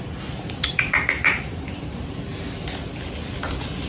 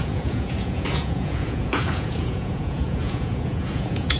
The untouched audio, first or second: first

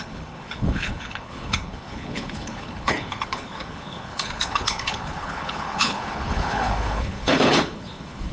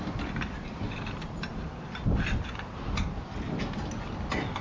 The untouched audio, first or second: second